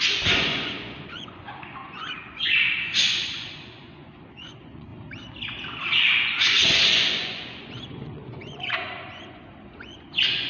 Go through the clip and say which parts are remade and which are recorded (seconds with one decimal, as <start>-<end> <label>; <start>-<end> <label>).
0.0-4.9 remade; 4.9-6.0 recorded; 6.0-10.5 remade